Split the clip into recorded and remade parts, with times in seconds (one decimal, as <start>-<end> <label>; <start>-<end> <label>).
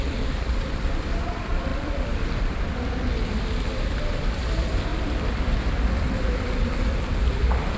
0.0-7.8 remade